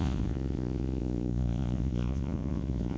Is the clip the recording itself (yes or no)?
no